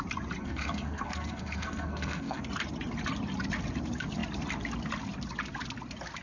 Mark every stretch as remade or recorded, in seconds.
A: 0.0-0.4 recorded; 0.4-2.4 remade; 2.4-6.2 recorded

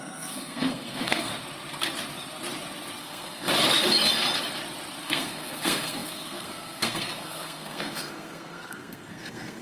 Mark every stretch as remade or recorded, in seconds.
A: 0.0-1.3 remade; 1.3-3.0 recorded; 3.0-3.5 remade; 3.5-5.0 recorded; 5.0-9.6 remade

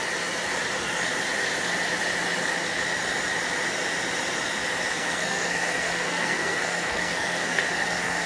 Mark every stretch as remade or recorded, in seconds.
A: 0.0-4.9 recorded; 4.9-8.3 remade

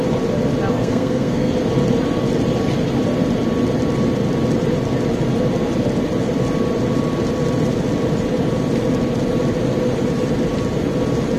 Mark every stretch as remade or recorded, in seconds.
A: 0.0-0.7 recorded; 0.7-1.5 remade; 1.5-11.4 recorded

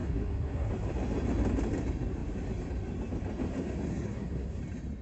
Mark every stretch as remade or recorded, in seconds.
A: 0.0-0.7 remade; 0.7-3.9 recorded; 3.9-4.6 remade; 4.6-5.0 recorded

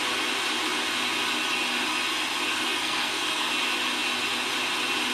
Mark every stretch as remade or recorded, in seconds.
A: 0.0-2.5 recorded; 2.5-3.5 remade; 3.5-5.1 recorded